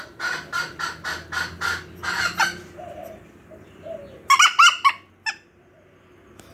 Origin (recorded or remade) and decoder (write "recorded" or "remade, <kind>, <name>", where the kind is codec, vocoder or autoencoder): recorded